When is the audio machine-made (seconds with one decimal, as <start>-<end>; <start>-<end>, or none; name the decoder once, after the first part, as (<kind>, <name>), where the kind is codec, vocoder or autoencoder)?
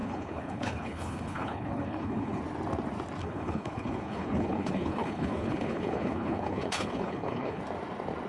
0.0-2.4 (codec, HILCodec); 3.2-7.6